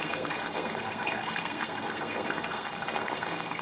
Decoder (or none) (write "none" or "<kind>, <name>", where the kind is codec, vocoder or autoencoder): codec, SNAC